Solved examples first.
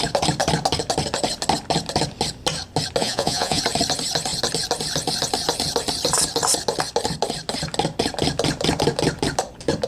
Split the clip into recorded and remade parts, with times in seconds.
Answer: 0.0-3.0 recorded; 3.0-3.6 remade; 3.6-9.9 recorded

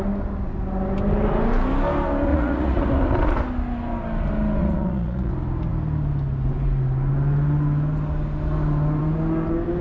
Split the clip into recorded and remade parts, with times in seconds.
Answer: 0.0-2.3 recorded; 2.3-2.9 remade; 2.9-4.6 recorded; 4.6-5.3 remade; 5.3-9.8 recorded

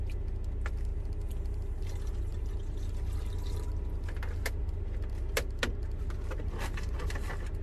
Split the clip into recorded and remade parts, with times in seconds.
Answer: 0.0-7.6 recorded

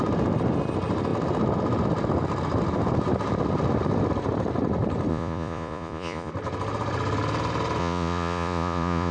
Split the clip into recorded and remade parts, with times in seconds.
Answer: 0.0-5.1 recorded; 5.1-6.3 remade; 6.3-7.8 recorded; 7.8-9.1 remade

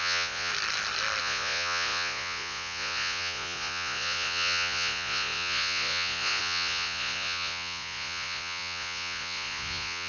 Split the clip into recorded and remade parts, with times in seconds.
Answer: 0.0-0.5 remade; 0.5-1.2 recorded; 1.2-10.1 remade

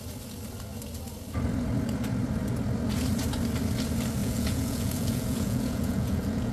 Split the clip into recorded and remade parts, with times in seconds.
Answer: 0.0-4.2 recorded; 4.2-6.5 remade

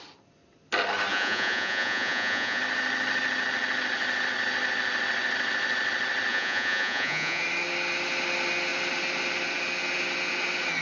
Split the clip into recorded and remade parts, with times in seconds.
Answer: 0.0-1.1 recorded; 1.1-2.6 remade; 2.6-6.3 recorded; 6.3-7.4 remade; 7.4-10.8 recorded

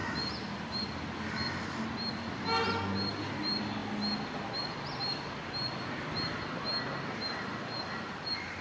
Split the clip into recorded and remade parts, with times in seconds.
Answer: 0.0-8.6 recorded